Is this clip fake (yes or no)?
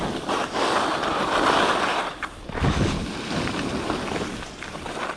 no